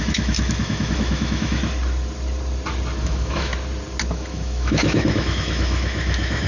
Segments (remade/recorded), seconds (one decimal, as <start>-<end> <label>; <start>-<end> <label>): 0.0-1.6 remade; 1.6-3.0 recorded; 3.0-3.5 remade; 3.5-4.1 recorded; 4.1-6.5 remade